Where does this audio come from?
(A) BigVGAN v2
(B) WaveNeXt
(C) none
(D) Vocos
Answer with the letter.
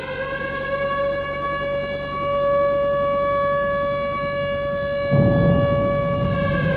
C